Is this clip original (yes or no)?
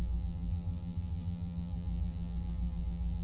no